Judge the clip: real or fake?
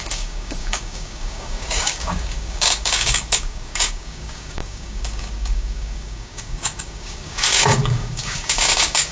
fake